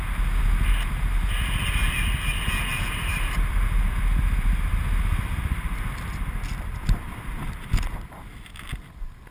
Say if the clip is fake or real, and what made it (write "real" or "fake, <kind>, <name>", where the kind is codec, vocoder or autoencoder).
real